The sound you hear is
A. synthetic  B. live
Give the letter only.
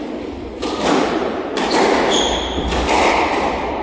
A